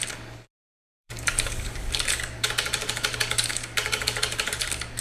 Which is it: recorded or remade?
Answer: remade